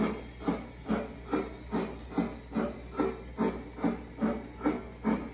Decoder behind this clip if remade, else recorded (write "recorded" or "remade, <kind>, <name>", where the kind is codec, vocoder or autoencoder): recorded